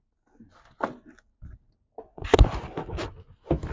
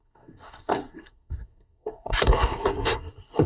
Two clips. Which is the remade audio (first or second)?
second